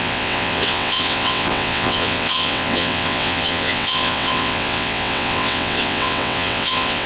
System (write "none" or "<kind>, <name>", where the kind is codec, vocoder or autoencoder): vocoder, WaveNeXt